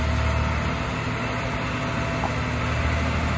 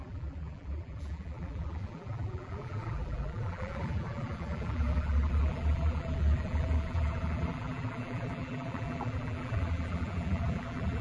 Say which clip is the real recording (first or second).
first